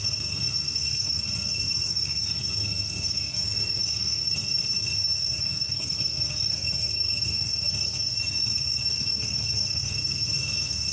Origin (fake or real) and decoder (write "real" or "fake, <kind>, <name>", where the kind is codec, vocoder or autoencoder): fake, codec, SNAC